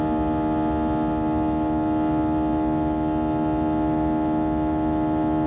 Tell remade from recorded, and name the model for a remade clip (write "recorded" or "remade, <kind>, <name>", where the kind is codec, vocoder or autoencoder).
recorded